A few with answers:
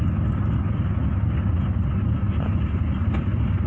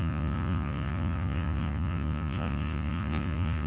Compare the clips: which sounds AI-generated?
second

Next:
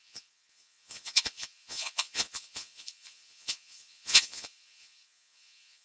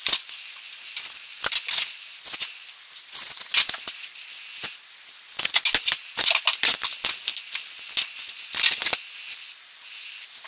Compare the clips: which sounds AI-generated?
first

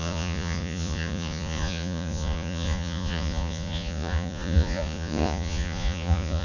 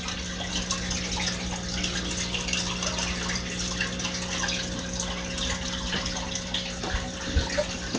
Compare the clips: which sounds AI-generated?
first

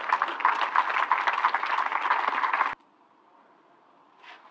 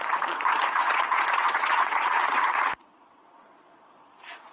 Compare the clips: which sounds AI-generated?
second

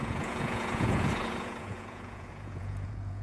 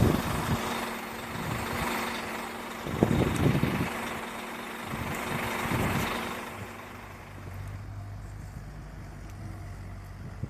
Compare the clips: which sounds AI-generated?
first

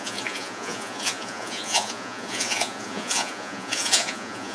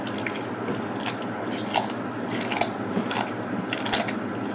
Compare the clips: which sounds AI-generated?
first